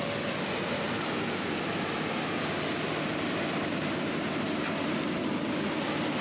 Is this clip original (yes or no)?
yes